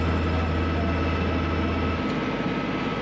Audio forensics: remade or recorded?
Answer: recorded